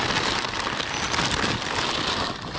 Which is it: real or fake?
real